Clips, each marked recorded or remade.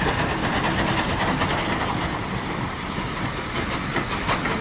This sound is recorded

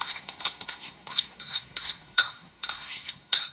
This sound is remade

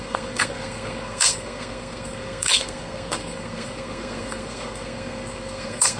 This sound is remade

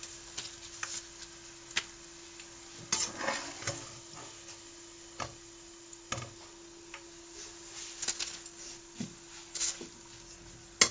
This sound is recorded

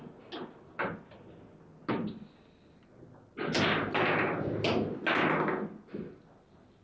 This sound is recorded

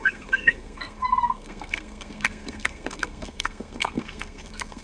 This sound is remade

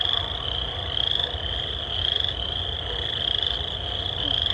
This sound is recorded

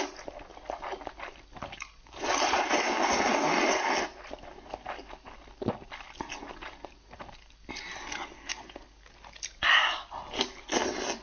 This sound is recorded